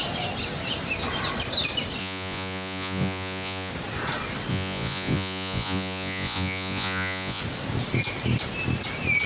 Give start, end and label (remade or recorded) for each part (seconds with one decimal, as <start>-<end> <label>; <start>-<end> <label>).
0.0-2.0 recorded; 2.0-3.7 remade; 3.7-4.5 recorded; 4.5-7.4 remade; 7.4-9.3 recorded